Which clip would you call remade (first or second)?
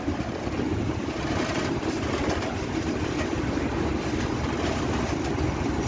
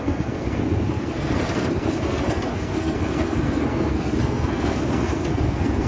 second